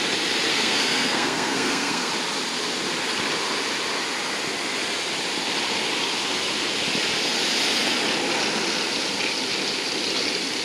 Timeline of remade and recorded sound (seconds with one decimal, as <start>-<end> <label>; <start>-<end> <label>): 0.0-0.5 recorded; 0.5-2.1 remade; 2.1-10.6 recorded